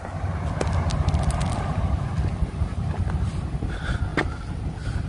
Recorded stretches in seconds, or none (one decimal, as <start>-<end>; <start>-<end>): 0.0-5.1